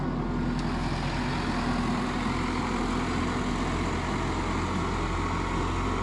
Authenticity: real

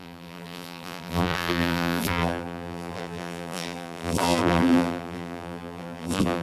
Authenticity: fake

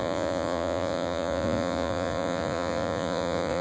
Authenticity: fake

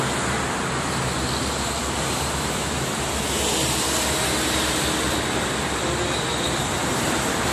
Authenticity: real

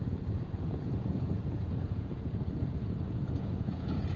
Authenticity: fake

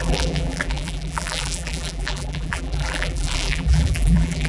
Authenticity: fake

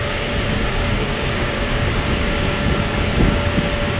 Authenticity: fake